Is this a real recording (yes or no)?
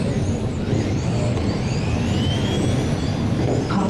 yes